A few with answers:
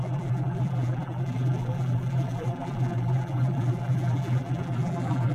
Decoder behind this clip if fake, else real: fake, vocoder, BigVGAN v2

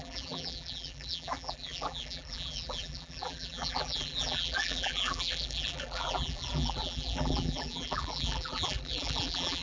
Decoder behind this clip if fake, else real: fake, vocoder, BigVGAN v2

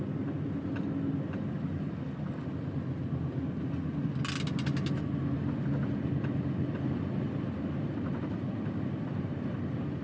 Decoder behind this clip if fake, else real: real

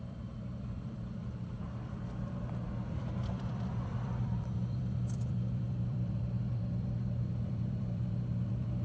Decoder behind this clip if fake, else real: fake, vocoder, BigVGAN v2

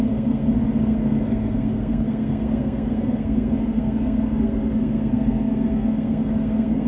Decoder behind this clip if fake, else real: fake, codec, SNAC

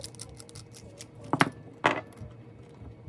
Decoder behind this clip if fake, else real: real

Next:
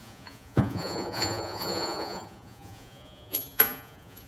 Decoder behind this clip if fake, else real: fake, vocoder, Vocos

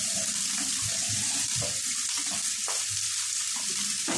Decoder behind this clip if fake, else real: fake, vocoder, BigVGAN v2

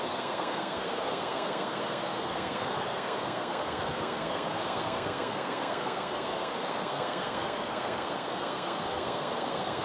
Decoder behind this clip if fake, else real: fake, codec, SNAC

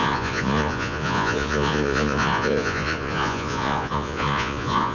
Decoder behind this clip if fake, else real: fake, vocoder, Vocos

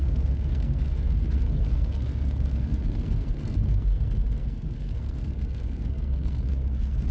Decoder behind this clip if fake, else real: fake, codec, SNAC